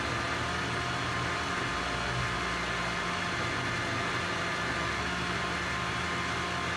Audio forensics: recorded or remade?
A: recorded